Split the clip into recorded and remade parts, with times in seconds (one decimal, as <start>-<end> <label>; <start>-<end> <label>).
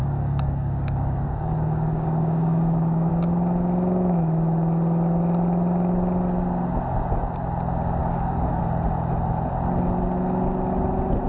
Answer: 0.0-3.1 remade; 3.1-8.0 recorded; 8.0-8.6 remade; 8.6-11.3 recorded